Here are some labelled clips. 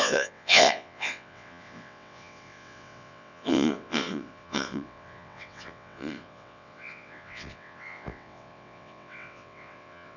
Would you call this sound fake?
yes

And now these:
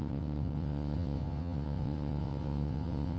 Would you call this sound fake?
yes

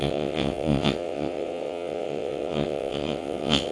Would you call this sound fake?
yes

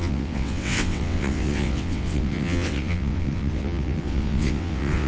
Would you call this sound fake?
yes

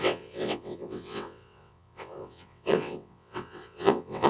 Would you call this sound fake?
yes